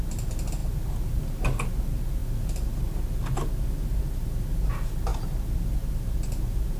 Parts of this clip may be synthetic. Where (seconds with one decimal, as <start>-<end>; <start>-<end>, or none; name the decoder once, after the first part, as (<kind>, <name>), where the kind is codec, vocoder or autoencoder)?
2.2-4.0 (vocoder, BigVGAN v2)